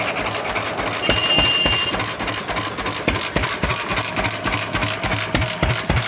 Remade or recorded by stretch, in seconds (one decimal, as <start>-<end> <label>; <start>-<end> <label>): 0.0-6.1 recorded